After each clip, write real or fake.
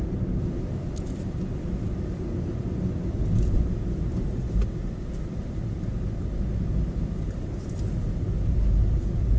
real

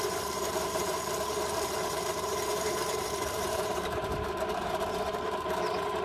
fake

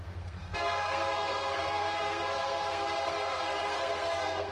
fake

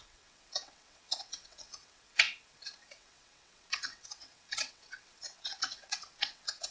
fake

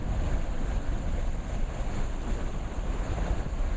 real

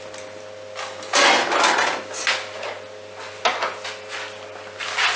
real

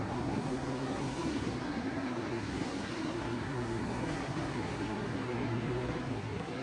fake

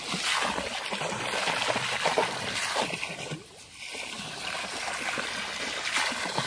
real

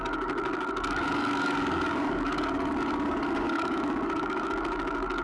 fake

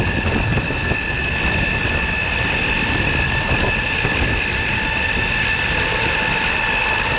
real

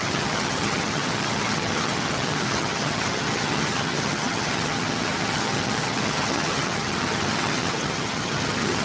fake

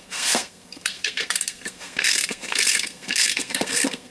fake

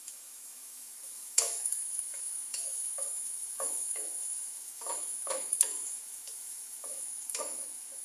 fake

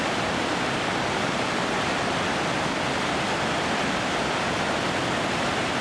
real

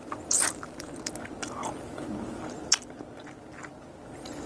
real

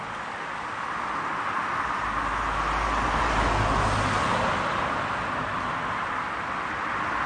real